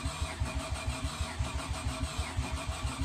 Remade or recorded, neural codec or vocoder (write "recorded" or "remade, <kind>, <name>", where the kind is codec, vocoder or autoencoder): recorded